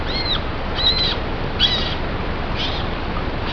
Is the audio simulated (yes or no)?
no